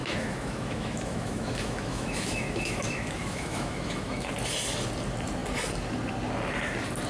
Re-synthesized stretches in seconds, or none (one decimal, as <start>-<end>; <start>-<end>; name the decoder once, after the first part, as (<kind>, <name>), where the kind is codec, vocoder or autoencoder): 0.0-4.3 (autoencoder, DAC-VAE)